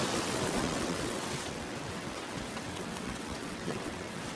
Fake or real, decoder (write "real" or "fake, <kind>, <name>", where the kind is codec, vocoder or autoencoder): fake, vocoder, WaveNeXt